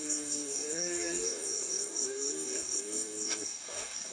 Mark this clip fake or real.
fake